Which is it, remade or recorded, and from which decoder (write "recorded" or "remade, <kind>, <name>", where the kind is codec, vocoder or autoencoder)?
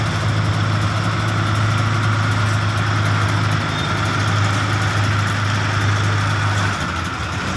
recorded